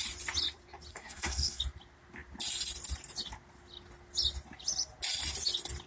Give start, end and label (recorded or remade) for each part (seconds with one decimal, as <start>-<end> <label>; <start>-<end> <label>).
0.0-0.9 recorded; 0.9-1.6 remade; 1.6-5.9 recorded